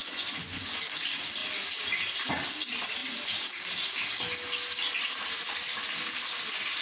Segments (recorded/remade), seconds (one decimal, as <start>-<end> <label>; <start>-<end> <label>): 0.0-0.8 remade; 0.8-6.8 recorded